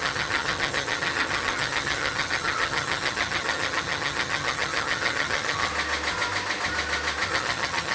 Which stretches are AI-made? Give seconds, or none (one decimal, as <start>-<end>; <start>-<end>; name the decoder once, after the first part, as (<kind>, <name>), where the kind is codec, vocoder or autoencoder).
0.0-5.7 (vocoder, HiFi-GAN); 7.3-7.9